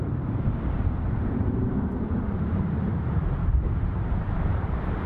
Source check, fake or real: fake